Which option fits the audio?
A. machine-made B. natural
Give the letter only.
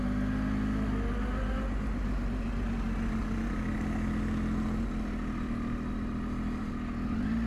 B